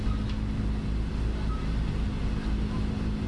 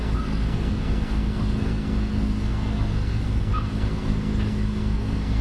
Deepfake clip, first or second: second